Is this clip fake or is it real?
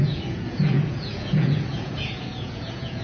fake